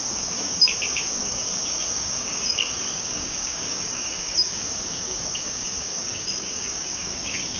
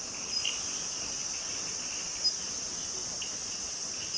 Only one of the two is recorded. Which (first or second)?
second